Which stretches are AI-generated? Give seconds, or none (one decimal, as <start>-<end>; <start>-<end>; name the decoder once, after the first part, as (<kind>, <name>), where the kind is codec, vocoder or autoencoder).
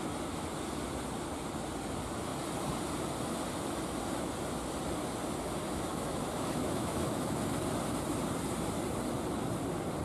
5.9-7.4 (autoencoder, DAC-VAE)